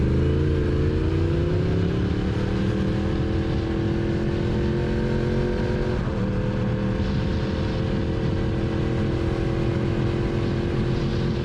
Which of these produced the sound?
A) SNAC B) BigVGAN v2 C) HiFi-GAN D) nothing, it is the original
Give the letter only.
D